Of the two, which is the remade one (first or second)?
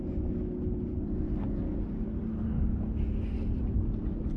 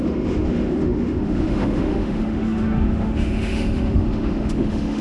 second